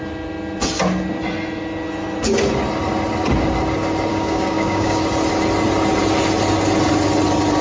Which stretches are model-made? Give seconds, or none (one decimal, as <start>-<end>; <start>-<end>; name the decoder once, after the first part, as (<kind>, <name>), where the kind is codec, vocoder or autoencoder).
4.1-5.0 (codec, DAC)